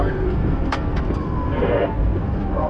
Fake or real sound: fake